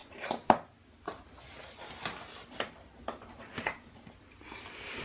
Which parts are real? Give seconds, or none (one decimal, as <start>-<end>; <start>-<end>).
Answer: 0.0-5.0